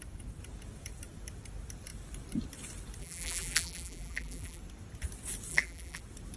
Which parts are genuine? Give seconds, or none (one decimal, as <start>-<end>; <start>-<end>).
0.0-3.0; 4.6-5.5; 6.0-6.4